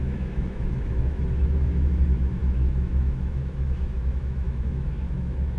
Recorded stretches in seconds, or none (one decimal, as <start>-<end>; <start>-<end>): none